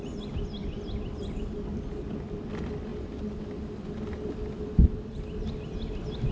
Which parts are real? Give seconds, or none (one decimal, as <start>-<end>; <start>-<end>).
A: 0.0-6.3